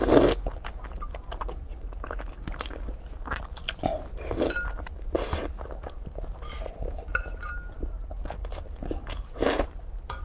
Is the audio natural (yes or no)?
yes